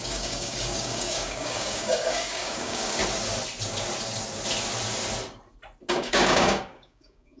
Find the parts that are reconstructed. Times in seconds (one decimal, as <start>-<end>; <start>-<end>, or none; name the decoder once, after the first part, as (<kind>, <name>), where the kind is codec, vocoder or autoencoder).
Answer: 0.0-3.0 (codec, DAC); 5.9-7.4